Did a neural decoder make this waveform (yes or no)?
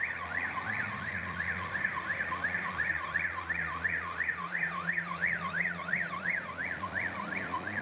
yes